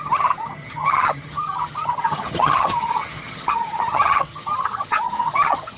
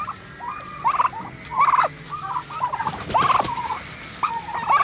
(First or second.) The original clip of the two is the second